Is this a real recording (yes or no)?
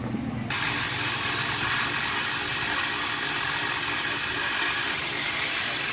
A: yes